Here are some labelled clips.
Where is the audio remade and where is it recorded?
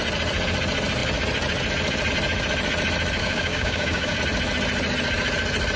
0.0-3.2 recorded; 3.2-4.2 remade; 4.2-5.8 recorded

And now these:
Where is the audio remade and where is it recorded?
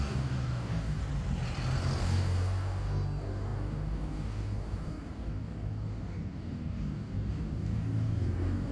0.0-1.0 remade; 1.0-2.0 recorded; 2.0-8.7 remade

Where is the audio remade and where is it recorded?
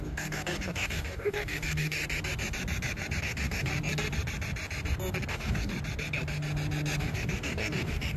0.0-2.0 remade; 2.0-3.2 recorded; 3.2-3.7 remade; 3.7-5.3 recorded; 5.3-5.7 remade; 5.7-7.0 recorded; 7.0-8.2 remade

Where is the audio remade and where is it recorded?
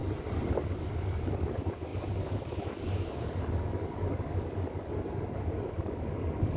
0.0-0.5 recorded; 0.5-6.6 remade